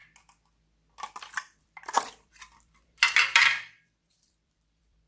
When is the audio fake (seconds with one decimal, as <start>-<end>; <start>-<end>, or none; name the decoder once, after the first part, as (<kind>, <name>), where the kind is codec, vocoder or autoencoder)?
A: 1.6-5.1 (vocoder, BigVGAN v2)